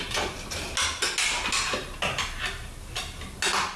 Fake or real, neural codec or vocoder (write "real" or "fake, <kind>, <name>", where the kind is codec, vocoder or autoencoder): real